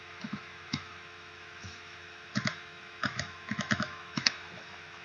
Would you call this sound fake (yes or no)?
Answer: yes